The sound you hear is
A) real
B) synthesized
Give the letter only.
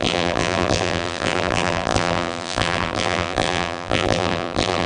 B